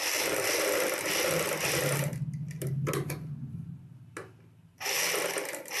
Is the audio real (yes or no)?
yes